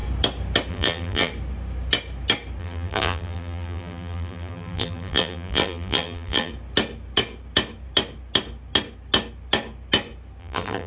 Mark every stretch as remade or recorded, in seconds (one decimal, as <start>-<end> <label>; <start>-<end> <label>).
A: 0.0-0.7 recorded; 0.7-1.3 remade; 1.3-2.6 recorded; 2.6-6.5 remade; 6.5-10.4 recorded; 10.4-10.9 remade